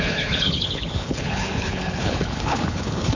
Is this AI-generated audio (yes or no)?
yes